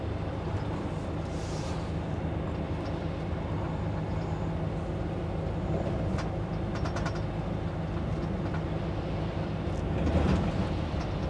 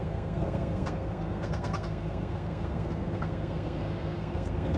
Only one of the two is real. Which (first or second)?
first